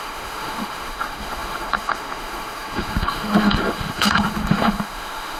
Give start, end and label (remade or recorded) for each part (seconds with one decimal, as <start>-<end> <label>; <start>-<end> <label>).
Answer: 0.0-5.4 remade